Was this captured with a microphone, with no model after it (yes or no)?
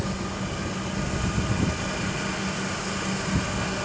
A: yes